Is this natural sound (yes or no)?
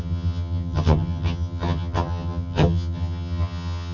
no